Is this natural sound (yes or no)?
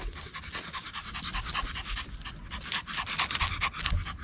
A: yes